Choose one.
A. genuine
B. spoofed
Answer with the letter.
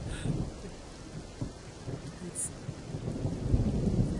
A